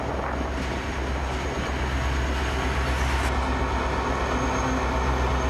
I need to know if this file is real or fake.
real